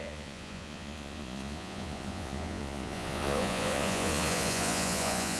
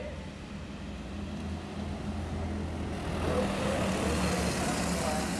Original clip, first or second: second